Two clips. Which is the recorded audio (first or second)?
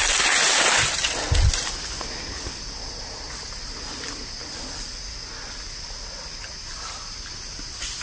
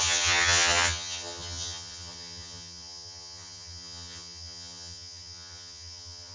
first